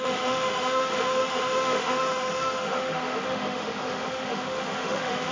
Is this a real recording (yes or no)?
no